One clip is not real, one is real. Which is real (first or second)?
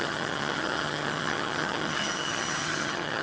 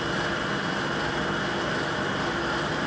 second